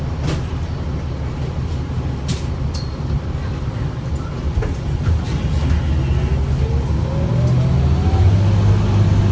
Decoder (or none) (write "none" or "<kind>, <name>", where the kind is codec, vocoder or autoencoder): none